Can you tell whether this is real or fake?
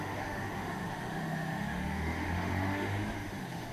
fake